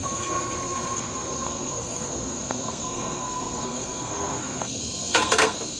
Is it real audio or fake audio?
fake